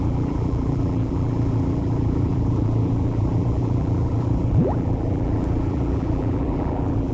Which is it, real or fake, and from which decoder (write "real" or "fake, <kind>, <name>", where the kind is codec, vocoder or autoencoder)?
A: fake, vocoder, BigVGAN v2